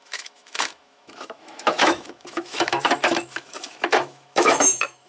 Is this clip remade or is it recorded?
remade